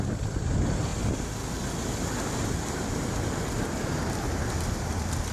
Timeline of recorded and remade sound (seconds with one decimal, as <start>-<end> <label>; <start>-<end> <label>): 0.0-5.3 recorded